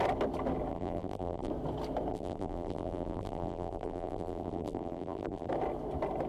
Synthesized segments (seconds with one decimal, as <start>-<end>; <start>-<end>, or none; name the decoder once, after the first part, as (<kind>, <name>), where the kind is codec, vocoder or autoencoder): 0.7-1.5 (vocoder, BigVGAN v2); 2.1-5.5